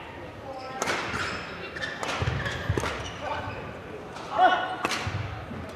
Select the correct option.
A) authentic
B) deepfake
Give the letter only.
A